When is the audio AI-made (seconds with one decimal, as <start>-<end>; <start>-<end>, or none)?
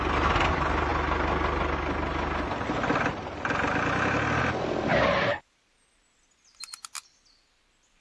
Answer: none